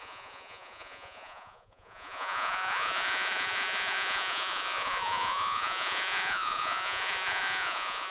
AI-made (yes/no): yes